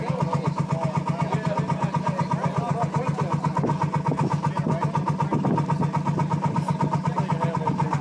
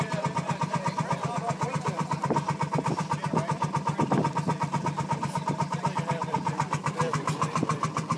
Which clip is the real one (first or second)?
first